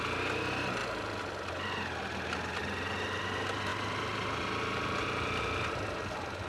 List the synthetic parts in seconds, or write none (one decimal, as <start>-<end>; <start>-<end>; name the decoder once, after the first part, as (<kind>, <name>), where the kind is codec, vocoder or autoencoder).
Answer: none